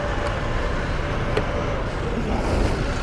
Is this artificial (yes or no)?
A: no